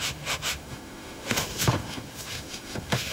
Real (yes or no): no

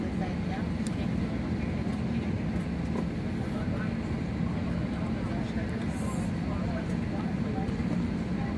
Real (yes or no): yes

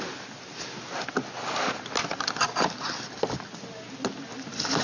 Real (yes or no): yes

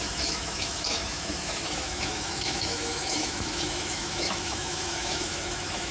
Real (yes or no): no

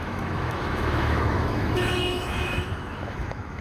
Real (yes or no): no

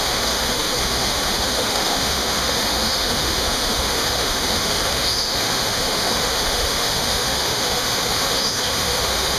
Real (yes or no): no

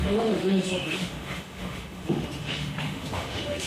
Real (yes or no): no